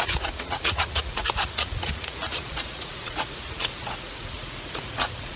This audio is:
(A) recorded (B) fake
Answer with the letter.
B